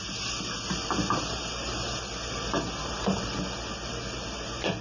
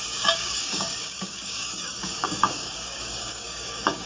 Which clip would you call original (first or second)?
first